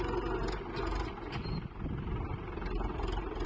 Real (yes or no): yes